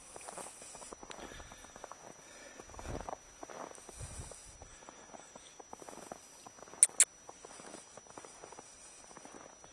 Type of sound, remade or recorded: recorded